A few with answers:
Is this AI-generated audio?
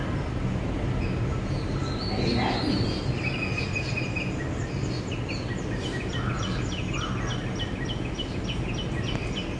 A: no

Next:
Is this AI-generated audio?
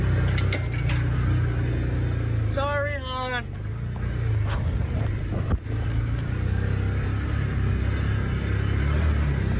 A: no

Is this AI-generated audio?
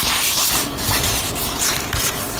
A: no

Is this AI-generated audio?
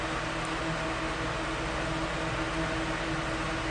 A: no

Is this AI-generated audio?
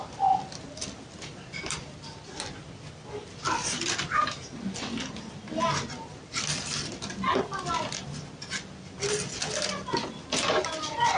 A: no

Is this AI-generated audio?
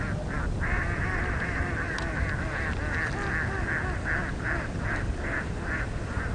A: no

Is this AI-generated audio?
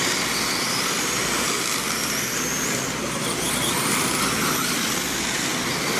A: no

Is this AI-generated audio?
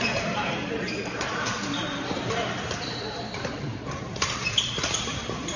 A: yes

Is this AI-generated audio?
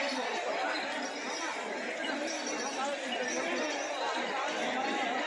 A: no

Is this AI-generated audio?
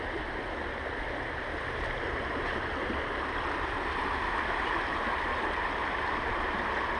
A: no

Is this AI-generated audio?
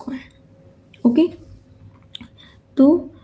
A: no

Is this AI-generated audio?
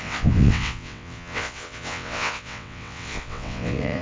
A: yes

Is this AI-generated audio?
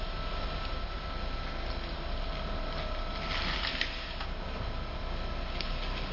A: no